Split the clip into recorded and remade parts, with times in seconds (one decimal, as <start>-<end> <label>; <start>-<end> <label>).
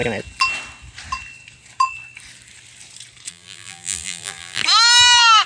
0.0-3.3 recorded; 3.3-4.6 remade; 4.6-5.5 recorded